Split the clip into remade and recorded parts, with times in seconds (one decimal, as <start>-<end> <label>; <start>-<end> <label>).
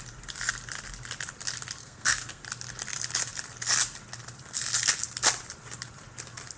0.0-1.8 recorded; 1.8-2.4 remade; 2.4-6.6 recorded